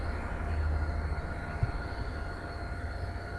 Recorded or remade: recorded